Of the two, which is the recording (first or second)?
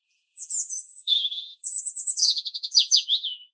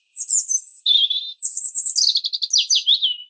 second